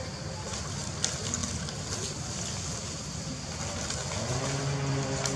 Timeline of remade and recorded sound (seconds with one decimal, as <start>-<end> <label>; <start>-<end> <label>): 0.0-5.4 recorded